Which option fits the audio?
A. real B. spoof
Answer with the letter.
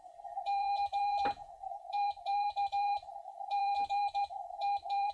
B